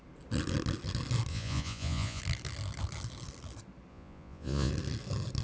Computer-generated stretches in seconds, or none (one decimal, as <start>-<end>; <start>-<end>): 1.3-2.2; 3.9-4.7